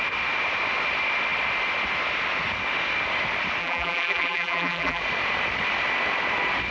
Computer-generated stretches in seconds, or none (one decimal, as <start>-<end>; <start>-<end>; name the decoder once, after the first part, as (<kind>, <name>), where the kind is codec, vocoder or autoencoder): 3.6-5.0 (vocoder, BigVGAN v2)